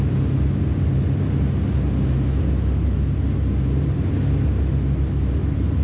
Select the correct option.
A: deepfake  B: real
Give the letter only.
B